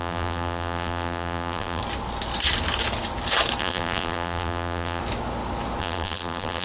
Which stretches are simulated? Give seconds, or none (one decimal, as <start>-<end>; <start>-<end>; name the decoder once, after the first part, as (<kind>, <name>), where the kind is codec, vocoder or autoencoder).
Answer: 0.0-1.8 (vocoder, BigVGAN v2); 3.6-5.0; 5.8-6.6